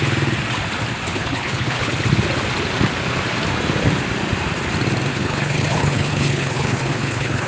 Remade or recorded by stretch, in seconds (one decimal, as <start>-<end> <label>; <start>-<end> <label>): 0.0-1.1 recorded; 1.1-1.9 remade; 1.9-5.1 recorded; 5.1-7.5 remade